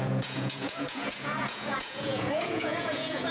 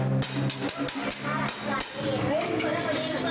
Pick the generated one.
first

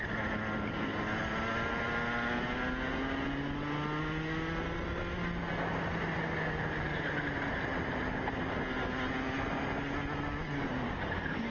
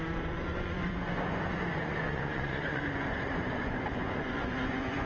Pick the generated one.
second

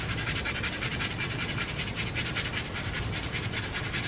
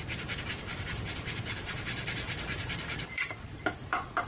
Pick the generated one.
second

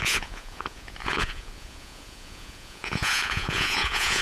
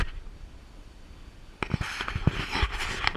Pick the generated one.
first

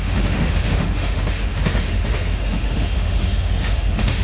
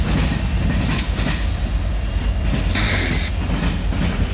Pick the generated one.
first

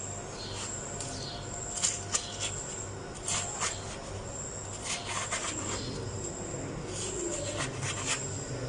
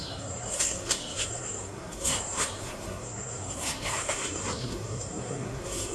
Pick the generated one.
second